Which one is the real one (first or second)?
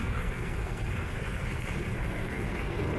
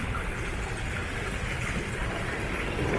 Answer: second